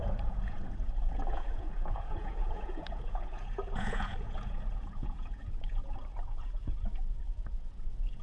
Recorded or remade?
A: remade